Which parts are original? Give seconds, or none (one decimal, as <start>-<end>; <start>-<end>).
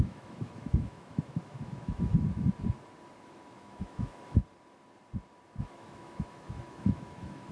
2.1-3.2; 4.4-5.6